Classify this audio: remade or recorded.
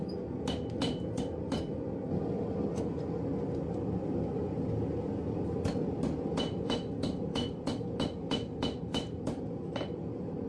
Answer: recorded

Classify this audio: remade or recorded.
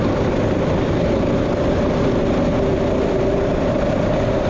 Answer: recorded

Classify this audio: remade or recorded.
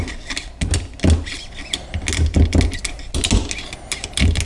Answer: recorded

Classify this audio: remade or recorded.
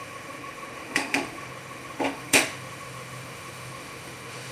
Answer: remade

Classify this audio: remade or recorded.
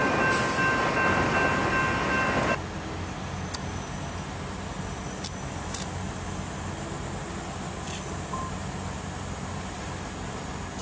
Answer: recorded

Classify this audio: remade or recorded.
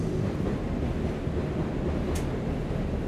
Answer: recorded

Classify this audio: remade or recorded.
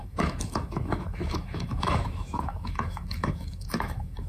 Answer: remade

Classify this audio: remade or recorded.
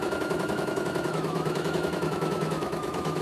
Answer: remade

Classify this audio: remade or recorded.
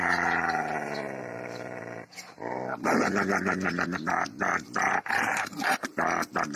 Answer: recorded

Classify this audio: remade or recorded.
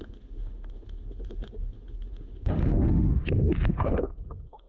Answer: remade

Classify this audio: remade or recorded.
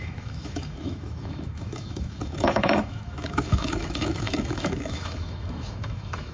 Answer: remade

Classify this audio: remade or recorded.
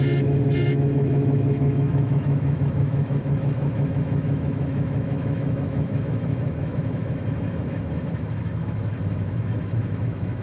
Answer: remade